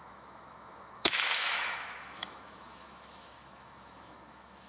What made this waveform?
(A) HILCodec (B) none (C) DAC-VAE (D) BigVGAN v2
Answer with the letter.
C